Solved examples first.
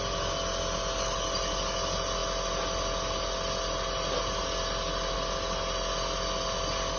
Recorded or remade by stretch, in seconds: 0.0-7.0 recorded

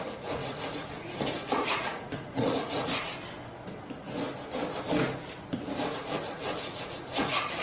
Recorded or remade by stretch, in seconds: 0.0-3.1 remade; 3.1-5.9 recorded; 5.9-7.6 remade

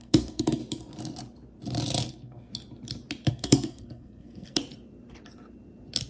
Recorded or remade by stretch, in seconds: 0.0-0.6 remade; 0.6-2.1 recorded; 2.1-2.5 remade; 2.5-3.3 recorded; 3.3-4.6 remade; 4.6-6.1 recorded

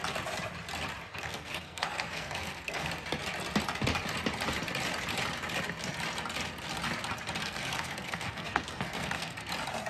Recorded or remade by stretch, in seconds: 0.0-1.1 recorded; 1.1-2.9 remade; 2.9-7.4 recorded; 7.4-9.5 remade; 9.5-9.9 recorded

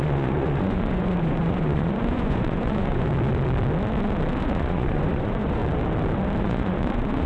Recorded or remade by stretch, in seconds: 0.0-3.1 remade; 3.1-4.4 recorded; 4.4-5.6 remade; 5.6-6.4 recorded; 6.4-7.3 remade

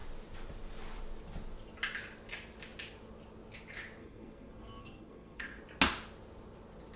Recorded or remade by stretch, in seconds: 0.0-4.0 recorded; 4.0-5.6 remade; 5.6-7.0 recorded

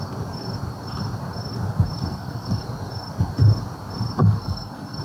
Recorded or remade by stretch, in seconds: 0.0-2.1 recorded; 2.1-2.6 remade; 2.6-4.2 recorded; 4.2-5.0 remade

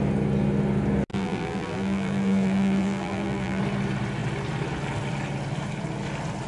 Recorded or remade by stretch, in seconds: 0.0-1.1 recorded; 1.1-3.6 remade; 3.6-6.5 recorded